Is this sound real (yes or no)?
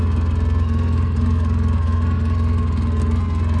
no